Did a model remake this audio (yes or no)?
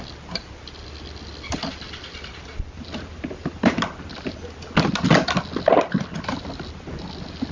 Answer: no